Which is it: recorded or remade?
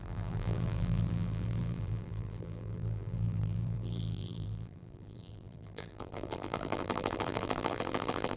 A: remade